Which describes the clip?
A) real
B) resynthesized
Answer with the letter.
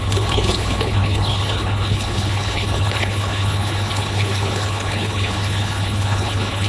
B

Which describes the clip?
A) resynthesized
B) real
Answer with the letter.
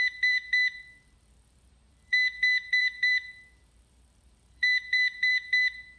A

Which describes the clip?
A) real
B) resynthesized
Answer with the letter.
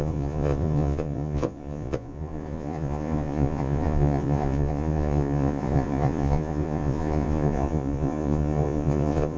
B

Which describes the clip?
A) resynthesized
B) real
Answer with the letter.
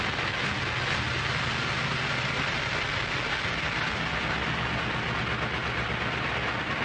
B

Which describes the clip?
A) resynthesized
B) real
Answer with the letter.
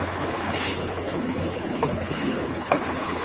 A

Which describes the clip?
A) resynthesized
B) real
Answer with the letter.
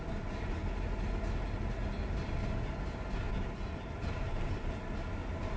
B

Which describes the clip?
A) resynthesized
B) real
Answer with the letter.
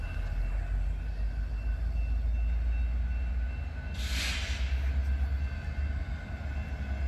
B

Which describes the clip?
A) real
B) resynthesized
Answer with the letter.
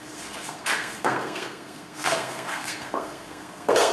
B